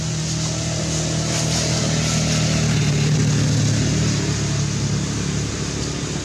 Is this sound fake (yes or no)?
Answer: no